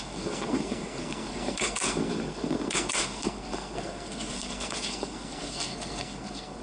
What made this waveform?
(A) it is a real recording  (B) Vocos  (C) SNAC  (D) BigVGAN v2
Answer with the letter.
C